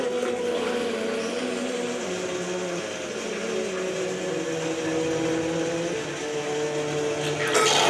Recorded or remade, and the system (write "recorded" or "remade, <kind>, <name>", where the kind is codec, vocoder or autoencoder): recorded